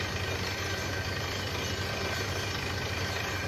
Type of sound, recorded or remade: remade